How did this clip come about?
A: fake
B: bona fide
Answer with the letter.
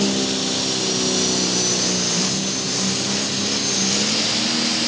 B